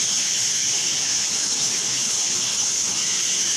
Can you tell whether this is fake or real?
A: fake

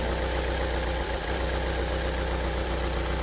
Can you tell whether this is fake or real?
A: real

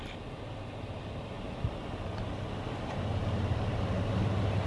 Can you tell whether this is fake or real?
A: real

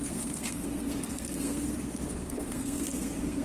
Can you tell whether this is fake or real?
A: fake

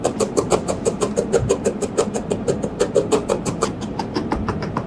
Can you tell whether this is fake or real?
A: fake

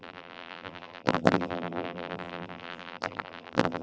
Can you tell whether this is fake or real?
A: fake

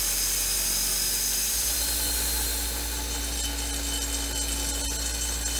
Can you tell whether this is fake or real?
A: real